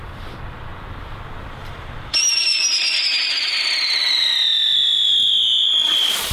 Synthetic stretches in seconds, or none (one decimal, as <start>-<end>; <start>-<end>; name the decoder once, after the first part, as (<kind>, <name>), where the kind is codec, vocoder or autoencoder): 2.1-5.1 (vocoder, BigVGAN v2)